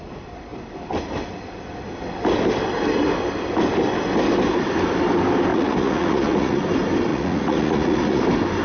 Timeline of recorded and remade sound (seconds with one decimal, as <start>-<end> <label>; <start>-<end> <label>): 0.0-5.5 recorded; 5.5-6.6 remade; 6.6-7.1 recorded; 7.1-8.2 remade; 8.2-8.6 recorded